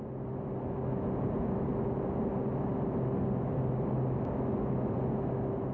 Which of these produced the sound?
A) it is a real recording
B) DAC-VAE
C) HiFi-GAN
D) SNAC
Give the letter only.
A